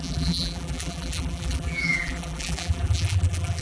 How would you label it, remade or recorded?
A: remade